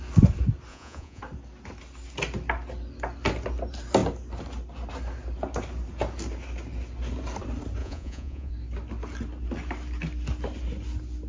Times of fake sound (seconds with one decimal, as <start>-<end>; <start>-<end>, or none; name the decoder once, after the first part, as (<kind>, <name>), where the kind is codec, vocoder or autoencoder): 0.7-1.2 (vocoder, Vocos); 7.8-8.5